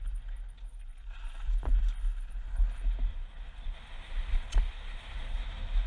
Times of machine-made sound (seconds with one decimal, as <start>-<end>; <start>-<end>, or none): 3.1-5.4